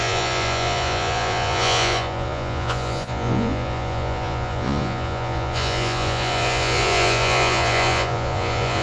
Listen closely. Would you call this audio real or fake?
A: fake